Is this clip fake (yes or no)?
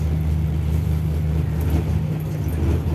no